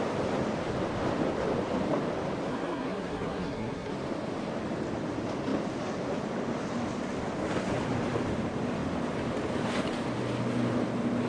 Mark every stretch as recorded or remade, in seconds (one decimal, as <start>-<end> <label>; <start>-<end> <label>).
0.0-2.5 recorded; 2.5-3.9 remade; 3.9-11.3 recorded